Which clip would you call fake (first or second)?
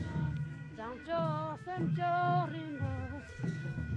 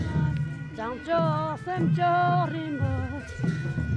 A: first